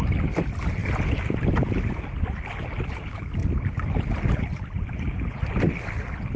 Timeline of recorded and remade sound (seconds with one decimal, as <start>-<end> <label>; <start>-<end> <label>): 0.0-0.8 recorded; 0.8-1.5 remade; 1.5-3.4 recorded; 3.4-5.6 remade; 5.6-6.4 recorded

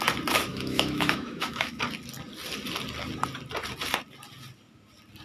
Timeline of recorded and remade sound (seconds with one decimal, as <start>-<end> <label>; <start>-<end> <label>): 0.0-0.5 recorded; 0.5-1.8 remade; 1.8-5.2 recorded

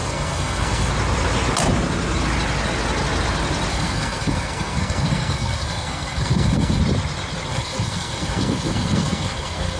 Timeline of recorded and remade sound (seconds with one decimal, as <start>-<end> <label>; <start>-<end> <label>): 0.0-0.9 remade; 0.9-3.7 recorded; 3.7-6.8 remade; 6.8-7.5 recorded; 7.5-9.8 remade

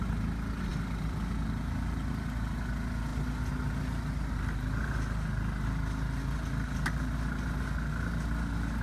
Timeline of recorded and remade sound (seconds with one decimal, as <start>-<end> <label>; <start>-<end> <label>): 0.0-8.8 recorded